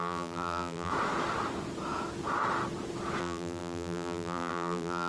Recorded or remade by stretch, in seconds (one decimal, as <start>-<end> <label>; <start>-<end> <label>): 0.0-0.9 remade; 0.9-3.2 recorded; 3.2-5.1 remade